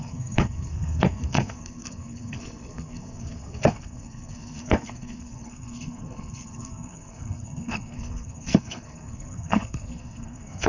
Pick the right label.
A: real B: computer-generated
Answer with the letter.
B